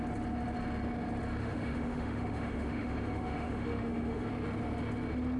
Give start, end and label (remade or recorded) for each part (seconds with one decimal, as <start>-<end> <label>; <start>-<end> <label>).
0.0-1.4 recorded; 1.4-4.3 remade; 4.3-5.4 recorded